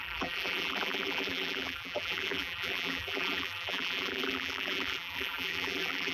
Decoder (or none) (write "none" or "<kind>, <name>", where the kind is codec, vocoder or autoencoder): vocoder, BigVGAN v2